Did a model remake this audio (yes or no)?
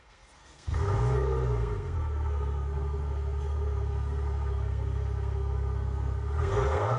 yes